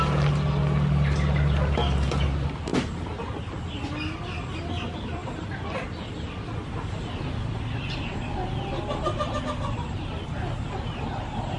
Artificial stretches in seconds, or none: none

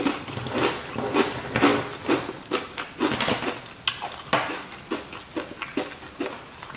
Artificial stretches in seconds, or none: none

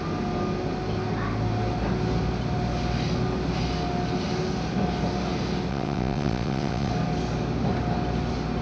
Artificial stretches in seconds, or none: 5.7-6.9 (vocoder, WaveNeXt)

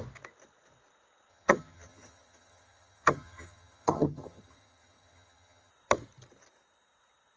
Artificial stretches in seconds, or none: 1.3-5.7 (vocoder, HiFi-GAN)

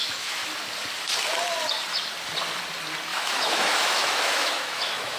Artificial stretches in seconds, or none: 0.0-0.5 (autoencoder, DAC-VAE); 3.1-5.2